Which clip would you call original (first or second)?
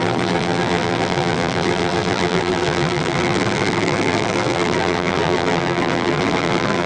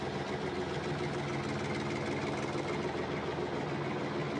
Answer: second